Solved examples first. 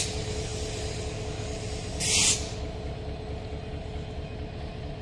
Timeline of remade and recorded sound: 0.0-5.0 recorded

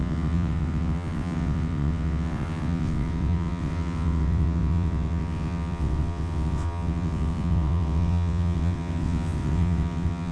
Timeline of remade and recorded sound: 0.0-10.3 remade

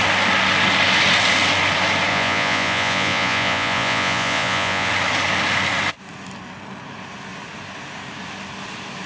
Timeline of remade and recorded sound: 0.0-2.1 recorded; 2.1-4.9 remade; 4.9-9.1 recorded

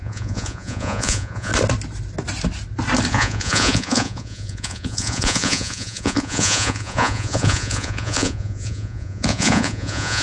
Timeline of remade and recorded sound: 0.0-1.5 remade; 1.5-3.1 recorded; 3.1-10.2 remade

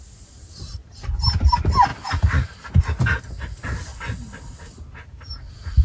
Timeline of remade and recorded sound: 0.0-5.8 recorded

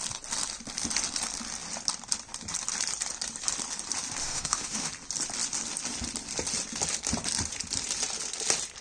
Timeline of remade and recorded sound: 0.0-4.2 recorded; 4.2-4.9 remade; 4.9-8.8 recorded

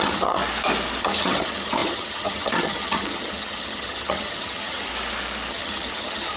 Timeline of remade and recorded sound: 0.0-0.4 remade; 0.4-1.0 recorded; 1.0-4.9 remade; 4.9-5.5 recorded; 5.5-6.4 remade

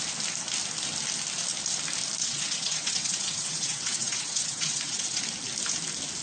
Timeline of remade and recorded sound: 0.0-2.2 recorded; 2.2-5.2 remade; 5.2-6.2 recorded